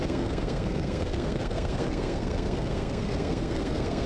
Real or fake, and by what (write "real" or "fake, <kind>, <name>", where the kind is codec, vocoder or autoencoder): fake, codec, SNAC